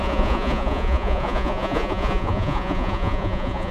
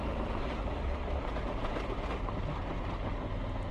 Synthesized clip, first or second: first